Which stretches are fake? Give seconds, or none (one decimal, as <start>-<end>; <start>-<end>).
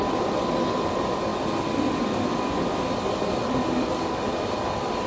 none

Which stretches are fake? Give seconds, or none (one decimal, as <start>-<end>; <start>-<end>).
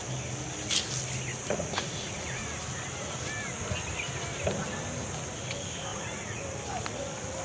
1.3-2.4; 5.9-6.4